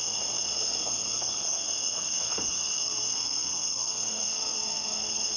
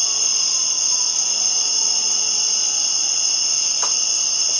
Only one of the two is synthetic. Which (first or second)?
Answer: first